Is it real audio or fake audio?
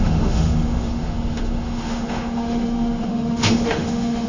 fake